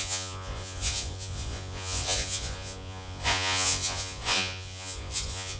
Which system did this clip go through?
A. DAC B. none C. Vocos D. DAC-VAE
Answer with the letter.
C